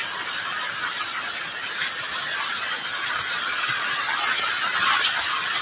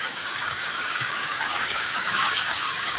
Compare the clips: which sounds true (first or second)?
first